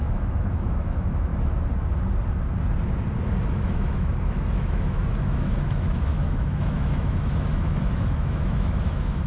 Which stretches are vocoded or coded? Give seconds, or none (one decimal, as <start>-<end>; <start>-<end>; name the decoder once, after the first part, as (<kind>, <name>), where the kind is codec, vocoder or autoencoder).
0.0-1.3 (autoencoder, DAC-VAE); 3.5-9.3